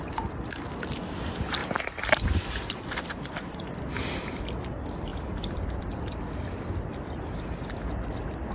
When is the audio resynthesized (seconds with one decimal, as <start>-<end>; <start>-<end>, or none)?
1.6-4.4; 5.1-6.2